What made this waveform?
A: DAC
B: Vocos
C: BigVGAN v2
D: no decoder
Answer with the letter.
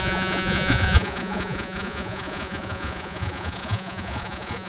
B